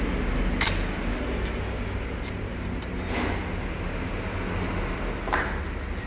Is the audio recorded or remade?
recorded